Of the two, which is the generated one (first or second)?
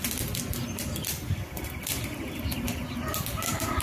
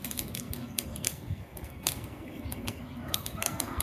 second